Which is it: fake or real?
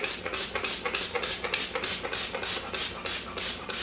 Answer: real